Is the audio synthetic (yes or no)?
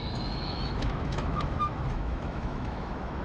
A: yes